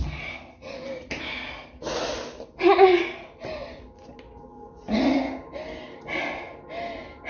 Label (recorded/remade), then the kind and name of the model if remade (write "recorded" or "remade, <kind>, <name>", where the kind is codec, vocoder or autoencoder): recorded